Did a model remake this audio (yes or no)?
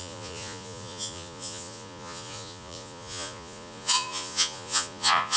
yes